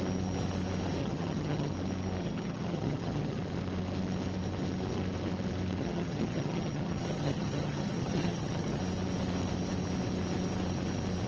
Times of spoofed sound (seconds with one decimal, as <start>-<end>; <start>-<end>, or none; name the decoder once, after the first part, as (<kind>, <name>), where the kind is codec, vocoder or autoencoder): 1.0-1.7 (vocoder, HiFi-GAN); 2.2-3.4; 5.8-8.8

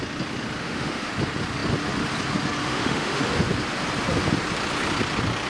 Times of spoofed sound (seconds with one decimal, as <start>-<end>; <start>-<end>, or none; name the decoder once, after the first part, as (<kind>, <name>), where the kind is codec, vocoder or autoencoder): 0.6-1.1 (autoencoder, DAC-VAE); 2.6-3.2

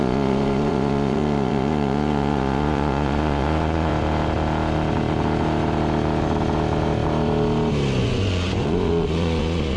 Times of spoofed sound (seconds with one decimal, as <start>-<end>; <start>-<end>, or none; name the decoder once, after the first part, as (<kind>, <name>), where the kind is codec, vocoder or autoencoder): 0.0-3.9 (vocoder, Vocos); 8.0-9.8

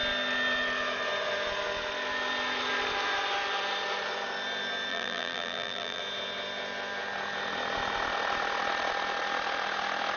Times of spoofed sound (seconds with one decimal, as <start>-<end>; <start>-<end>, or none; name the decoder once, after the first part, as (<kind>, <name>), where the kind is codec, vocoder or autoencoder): 4.9-6.0 (vocoder, BigVGAN v2)

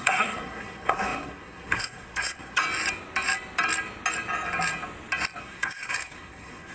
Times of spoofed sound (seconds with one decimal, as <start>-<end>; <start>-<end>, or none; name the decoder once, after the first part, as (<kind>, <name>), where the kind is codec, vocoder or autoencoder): 0.0-2.6 (codec, SNAC); 5.4-6.7

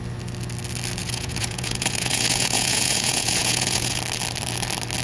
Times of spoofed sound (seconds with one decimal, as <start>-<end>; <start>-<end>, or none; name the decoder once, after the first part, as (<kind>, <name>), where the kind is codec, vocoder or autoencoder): 1.0-4.0 (vocoder, Vocos)

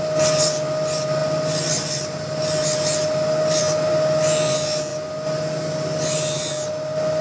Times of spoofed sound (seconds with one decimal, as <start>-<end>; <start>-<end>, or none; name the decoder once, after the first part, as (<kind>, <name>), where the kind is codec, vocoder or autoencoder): none